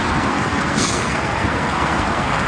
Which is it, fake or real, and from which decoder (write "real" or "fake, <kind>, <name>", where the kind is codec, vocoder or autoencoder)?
fake, codec, SNAC